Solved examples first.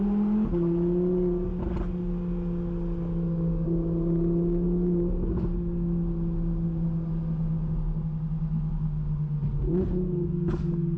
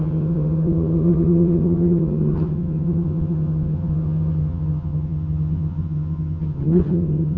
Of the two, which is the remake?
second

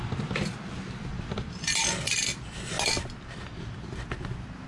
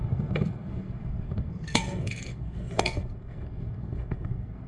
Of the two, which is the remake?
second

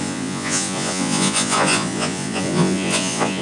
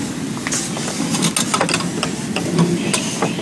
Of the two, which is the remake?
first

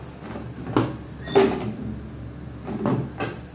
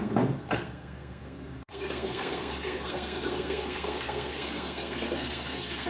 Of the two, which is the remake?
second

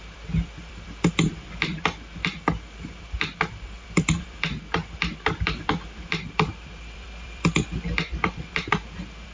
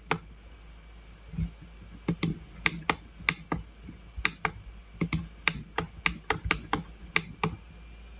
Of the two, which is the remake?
first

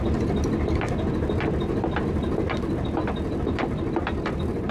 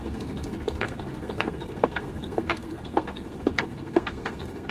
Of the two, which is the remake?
second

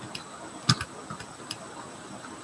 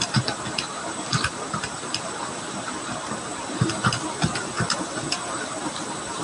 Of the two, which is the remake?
second